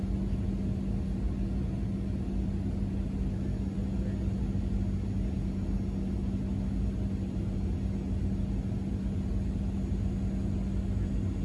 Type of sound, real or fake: real